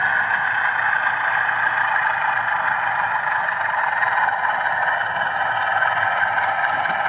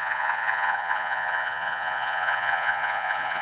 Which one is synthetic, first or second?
second